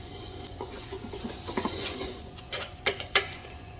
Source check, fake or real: fake